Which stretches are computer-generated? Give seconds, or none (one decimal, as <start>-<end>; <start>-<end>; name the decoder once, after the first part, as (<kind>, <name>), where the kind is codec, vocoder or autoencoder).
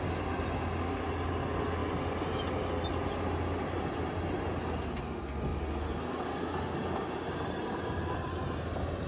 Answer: none